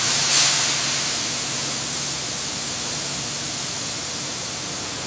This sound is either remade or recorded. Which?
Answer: recorded